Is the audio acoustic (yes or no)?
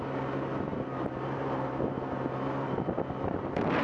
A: yes